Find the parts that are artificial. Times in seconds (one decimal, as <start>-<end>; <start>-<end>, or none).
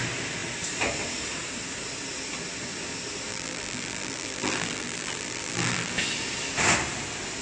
3.3-5.9